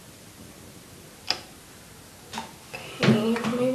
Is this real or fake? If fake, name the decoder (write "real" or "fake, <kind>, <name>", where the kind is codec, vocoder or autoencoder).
real